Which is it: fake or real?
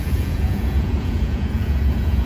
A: fake